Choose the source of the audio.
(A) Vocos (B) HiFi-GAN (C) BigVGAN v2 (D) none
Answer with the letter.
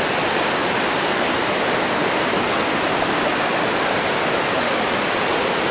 D